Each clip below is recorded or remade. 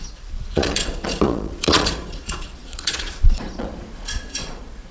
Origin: remade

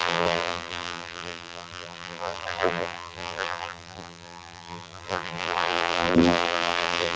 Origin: remade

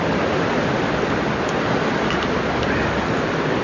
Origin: recorded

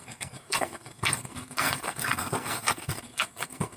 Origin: remade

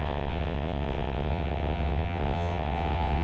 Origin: remade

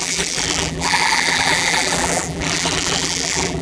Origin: remade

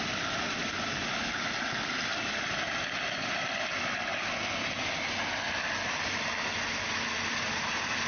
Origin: recorded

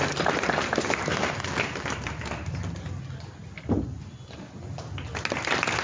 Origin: recorded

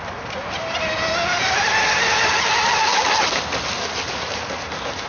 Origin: recorded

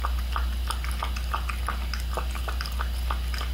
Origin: recorded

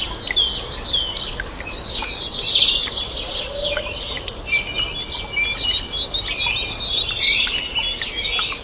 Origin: recorded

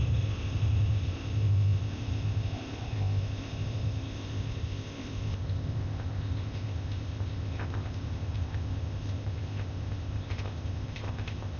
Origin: remade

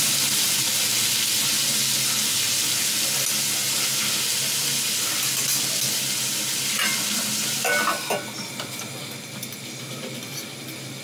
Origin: recorded